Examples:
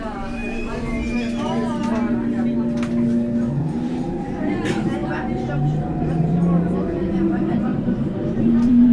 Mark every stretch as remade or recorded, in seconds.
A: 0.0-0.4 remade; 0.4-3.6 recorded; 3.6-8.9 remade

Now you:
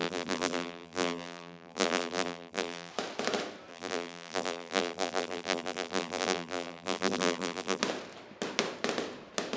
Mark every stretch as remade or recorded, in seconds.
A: 0.0-2.9 remade; 2.9-3.7 recorded; 3.7-7.8 remade; 7.8-9.6 recorded

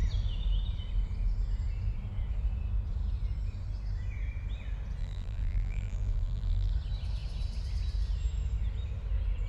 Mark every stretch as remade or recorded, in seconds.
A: 0.0-5.0 recorded; 5.0-6.7 remade; 6.7-9.5 recorded

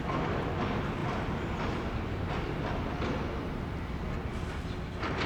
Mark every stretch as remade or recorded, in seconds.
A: 0.0-5.3 recorded

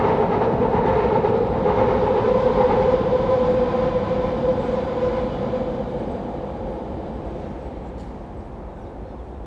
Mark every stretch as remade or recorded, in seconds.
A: 0.0-4.5 recorded; 4.5-5.1 remade; 5.1-9.5 recorded